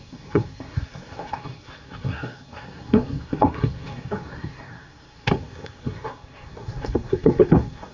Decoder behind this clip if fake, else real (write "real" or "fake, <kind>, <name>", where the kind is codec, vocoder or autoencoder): fake, codec, SNAC